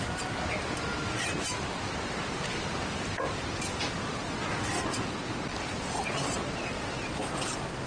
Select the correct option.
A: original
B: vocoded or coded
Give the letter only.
A